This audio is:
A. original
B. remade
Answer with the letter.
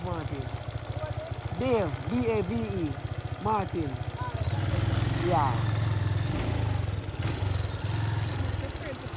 A